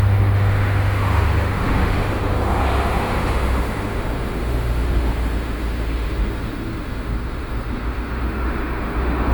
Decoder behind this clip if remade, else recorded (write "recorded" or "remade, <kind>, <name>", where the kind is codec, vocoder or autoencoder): remade, autoencoder, DAC-VAE